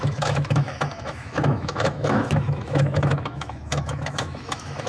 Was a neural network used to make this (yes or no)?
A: yes